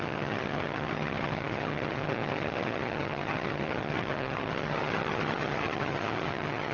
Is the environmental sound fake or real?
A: fake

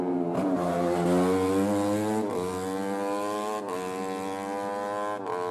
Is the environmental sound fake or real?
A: real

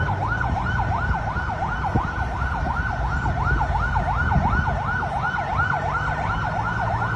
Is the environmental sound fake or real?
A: real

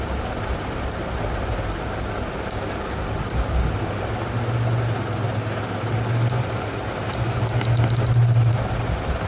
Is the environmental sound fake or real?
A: real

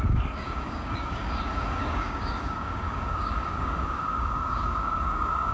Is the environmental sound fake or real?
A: fake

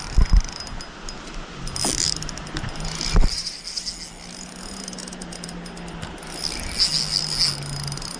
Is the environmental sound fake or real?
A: real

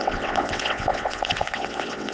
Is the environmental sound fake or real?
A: fake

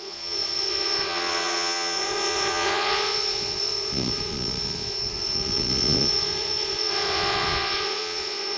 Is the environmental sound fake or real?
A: fake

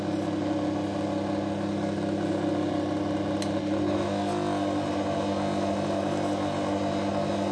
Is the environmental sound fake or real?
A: real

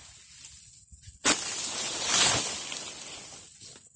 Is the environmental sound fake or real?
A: real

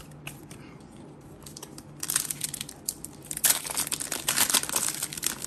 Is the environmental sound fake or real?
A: real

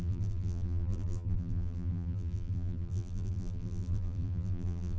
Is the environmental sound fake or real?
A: fake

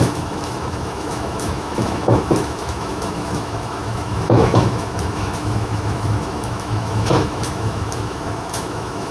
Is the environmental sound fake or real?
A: fake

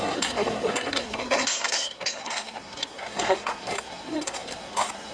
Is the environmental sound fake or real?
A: fake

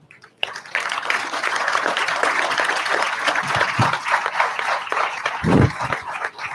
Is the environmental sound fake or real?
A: fake